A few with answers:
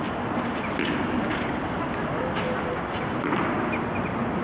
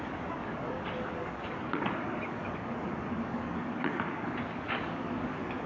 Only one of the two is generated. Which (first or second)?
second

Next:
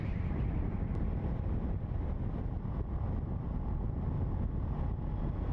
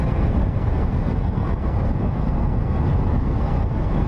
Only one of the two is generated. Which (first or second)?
second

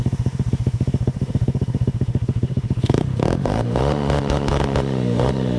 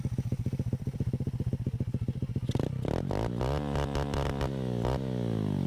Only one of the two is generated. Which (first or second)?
first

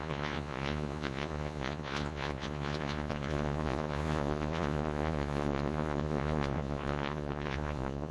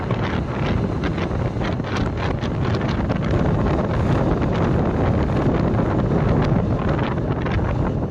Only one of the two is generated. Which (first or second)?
first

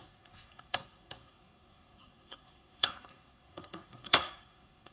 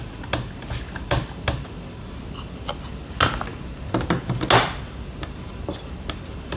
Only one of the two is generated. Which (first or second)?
first